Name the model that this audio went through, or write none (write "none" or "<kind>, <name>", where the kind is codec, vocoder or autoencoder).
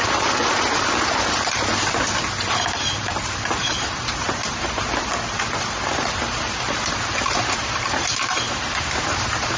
vocoder, BigVGAN v2